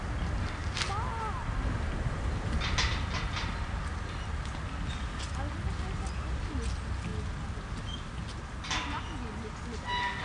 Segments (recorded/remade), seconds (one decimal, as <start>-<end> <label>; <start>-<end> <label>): 0.0-10.2 recorded